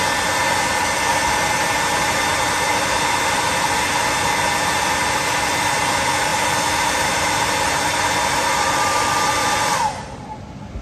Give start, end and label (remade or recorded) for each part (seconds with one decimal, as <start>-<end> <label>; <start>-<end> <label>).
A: 0.0-10.8 recorded